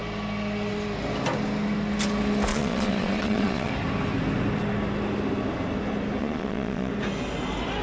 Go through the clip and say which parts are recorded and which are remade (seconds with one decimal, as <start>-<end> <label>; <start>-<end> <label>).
0.0-2.5 recorded; 2.5-3.7 remade; 3.7-6.2 recorded; 6.2-6.9 remade; 6.9-7.8 recorded